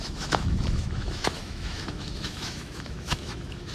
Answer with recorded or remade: remade